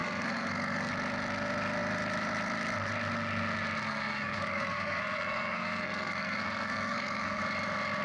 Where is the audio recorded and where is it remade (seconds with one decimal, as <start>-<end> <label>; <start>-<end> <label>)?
0.0-0.9 remade; 0.9-3.8 recorded; 3.8-7.4 remade; 7.4-8.0 recorded